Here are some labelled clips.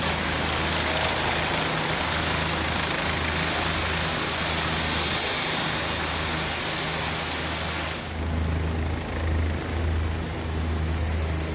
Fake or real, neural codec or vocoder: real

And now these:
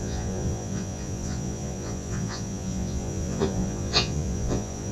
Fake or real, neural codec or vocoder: fake, vocoder, Vocos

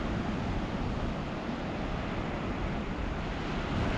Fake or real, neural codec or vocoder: real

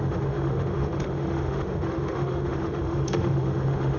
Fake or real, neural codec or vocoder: fake, autoencoder, DAC-VAE